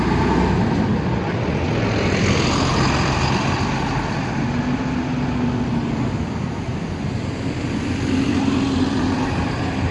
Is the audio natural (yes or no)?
yes